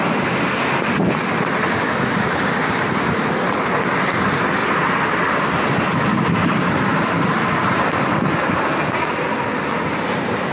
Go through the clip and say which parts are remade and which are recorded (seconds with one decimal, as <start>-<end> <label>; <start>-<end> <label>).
0.0-4.6 recorded; 4.6-5.6 remade; 5.6-6.9 recorded; 6.9-8.6 remade; 8.6-10.5 recorded